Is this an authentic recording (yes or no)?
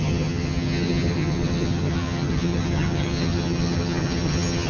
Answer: no